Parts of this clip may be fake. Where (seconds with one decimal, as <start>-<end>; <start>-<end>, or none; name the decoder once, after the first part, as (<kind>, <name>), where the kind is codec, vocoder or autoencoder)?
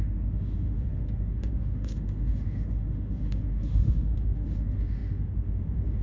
0.0-6.0 (autoencoder, DAC-VAE)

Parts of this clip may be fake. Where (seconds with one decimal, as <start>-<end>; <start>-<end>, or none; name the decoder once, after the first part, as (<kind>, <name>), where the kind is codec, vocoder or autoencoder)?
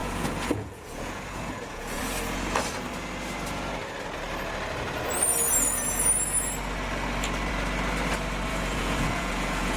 0.0-2.0 (vocoder, Vocos); 8.5-9.8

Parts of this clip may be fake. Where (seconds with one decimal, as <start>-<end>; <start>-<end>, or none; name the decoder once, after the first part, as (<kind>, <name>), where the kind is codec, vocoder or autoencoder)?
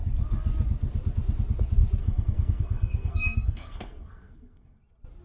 2.0-4.8 (codec, SNAC)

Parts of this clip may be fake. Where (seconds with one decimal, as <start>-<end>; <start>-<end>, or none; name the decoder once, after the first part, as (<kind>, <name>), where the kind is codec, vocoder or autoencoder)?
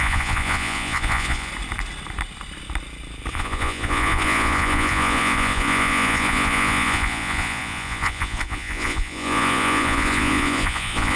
0.0-1.5 (vocoder, Vocos); 3.3-11.2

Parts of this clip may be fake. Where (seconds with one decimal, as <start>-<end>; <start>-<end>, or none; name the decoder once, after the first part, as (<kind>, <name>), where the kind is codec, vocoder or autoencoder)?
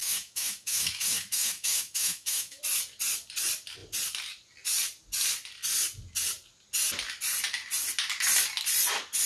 0.0-2.6 (autoencoder, DAC-VAE)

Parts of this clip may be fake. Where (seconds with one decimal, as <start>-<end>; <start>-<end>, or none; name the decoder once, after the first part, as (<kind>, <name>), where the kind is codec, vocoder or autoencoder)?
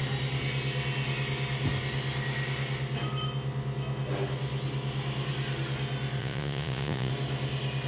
6.2-7.1 (vocoder, Vocos)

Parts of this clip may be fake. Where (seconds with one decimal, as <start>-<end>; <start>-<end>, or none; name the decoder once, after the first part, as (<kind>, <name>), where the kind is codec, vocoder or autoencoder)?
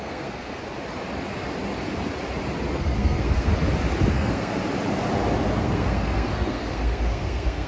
0.0-0.6 (codec, SNAC); 2.7-3.5; 4.1-4.6; 5.6-7.7